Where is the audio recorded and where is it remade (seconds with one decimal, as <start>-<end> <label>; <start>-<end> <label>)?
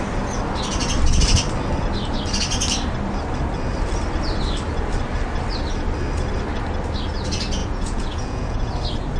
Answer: 0.0-7.6 recorded; 7.6-8.7 remade; 8.7-9.2 recorded